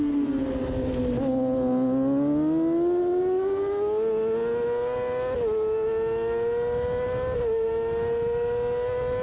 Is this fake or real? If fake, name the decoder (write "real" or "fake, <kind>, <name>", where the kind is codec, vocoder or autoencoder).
real